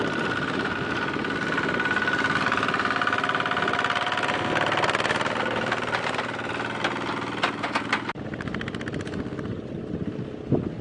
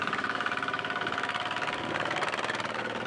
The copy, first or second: second